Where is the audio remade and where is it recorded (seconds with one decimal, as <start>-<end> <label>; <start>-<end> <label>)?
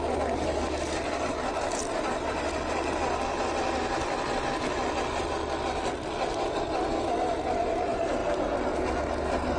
0.0-9.6 recorded